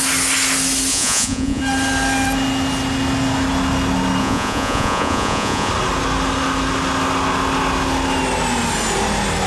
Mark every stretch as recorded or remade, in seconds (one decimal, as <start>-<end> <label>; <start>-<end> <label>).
0.0-0.9 recorded; 0.9-1.6 remade; 1.6-4.2 recorded; 4.2-5.7 remade; 5.7-9.5 recorded